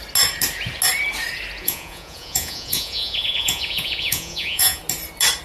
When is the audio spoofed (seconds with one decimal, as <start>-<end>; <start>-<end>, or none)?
1.6-4.8

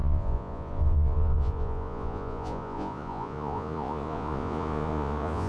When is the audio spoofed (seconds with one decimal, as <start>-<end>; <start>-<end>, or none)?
0.0-5.5

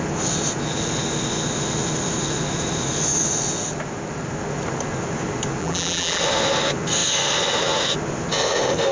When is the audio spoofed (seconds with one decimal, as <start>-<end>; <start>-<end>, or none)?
5.6-6.2

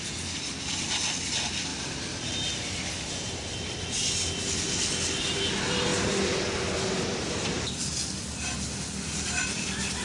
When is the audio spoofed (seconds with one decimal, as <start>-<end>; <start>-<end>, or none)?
1.7-3.1; 5.9-10.0

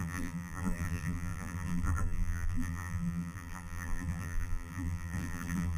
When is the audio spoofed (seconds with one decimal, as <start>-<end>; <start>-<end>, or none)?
0.0-5.8